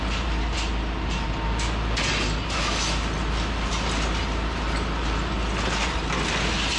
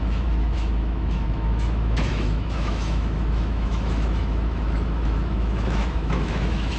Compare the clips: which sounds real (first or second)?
first